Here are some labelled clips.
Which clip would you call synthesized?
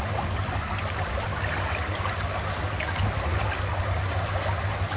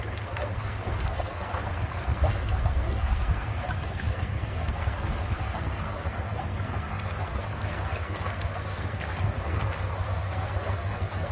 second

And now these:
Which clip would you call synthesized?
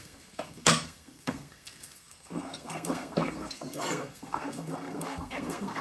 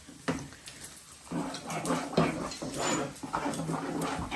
first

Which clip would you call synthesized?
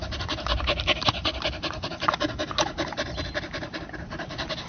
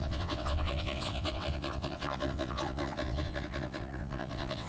second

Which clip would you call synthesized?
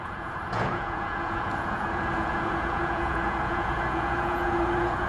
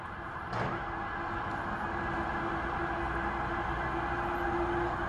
first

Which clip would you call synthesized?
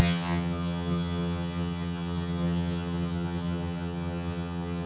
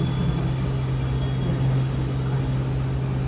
first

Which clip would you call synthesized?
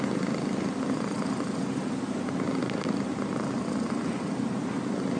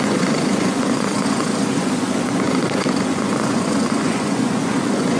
second